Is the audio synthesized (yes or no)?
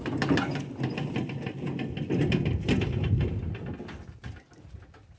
no